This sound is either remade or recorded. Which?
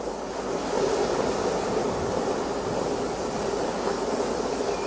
recorded